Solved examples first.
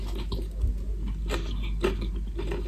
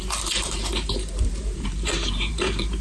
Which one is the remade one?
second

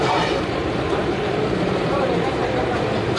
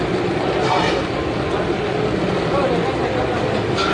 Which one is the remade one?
first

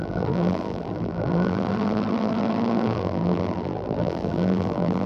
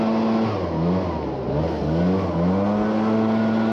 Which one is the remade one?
first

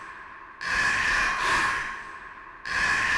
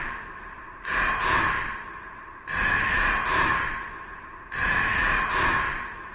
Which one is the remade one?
second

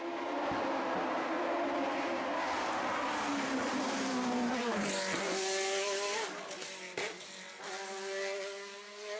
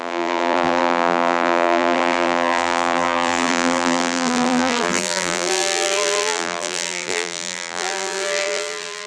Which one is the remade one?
second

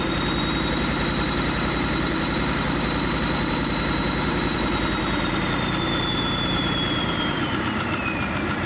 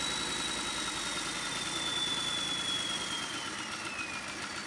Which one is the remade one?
first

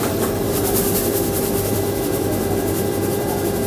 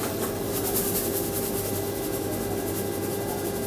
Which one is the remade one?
first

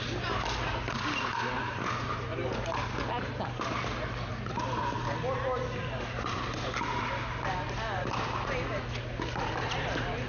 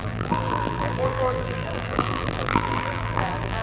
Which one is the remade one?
second